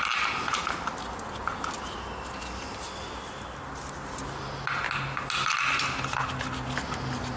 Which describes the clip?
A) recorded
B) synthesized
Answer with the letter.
A